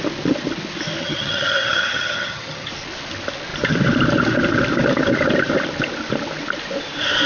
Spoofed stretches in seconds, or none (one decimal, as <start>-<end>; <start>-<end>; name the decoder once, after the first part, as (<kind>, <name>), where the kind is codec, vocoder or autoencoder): 1.0-2.7 (vocoder, HiFi-GAN)